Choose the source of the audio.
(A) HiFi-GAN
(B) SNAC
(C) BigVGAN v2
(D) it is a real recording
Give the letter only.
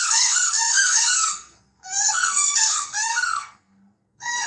B